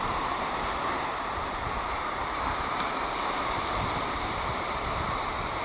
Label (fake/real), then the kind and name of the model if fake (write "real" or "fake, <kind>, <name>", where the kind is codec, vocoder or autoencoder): fake, vocoder, BigVGAN v2